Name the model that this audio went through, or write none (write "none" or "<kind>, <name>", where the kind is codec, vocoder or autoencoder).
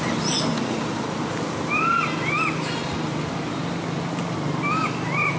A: none